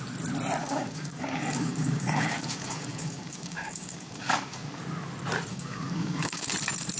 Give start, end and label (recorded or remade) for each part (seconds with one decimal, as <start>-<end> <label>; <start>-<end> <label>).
0.0-0.6 recorded; 0.6-4.8 remade; 4.8-5.5 recorded; 5.5-6.5 remade; 6.5-7.0 recorded